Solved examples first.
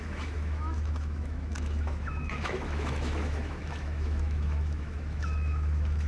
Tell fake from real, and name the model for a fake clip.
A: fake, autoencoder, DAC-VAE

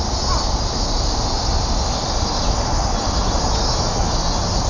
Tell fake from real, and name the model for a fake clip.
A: real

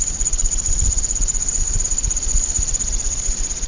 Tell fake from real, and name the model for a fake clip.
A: fake, vocoder, BigVGAN v2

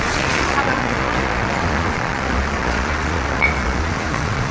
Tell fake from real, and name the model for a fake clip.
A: fake, vocoder, Vocos